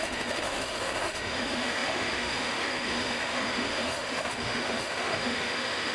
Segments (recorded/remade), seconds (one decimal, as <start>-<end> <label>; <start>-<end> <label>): 0.0-5.9 remade